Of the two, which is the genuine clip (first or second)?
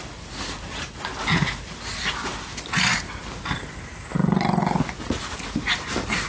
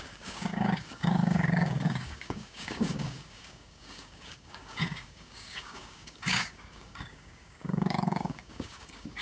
first